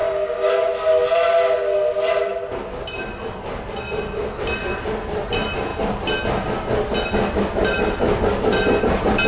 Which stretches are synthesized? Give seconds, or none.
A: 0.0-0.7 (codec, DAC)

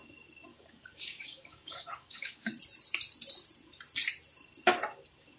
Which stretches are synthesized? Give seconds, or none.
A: 0.5-2.5 (codec, DAC)

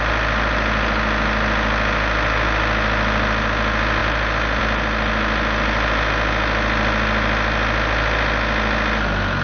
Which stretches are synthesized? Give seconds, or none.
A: none